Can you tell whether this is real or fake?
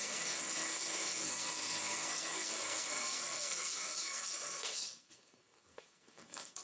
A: fake